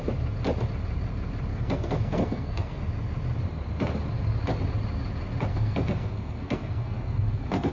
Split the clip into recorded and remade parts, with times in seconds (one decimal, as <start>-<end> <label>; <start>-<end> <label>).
0.0-1.5 recorded; 1.5-2.8 remade; 2.8-5.5 recorded; 5.5-7.7 remade